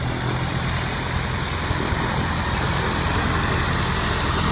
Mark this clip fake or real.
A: real